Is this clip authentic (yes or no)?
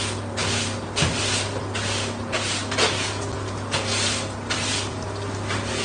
yes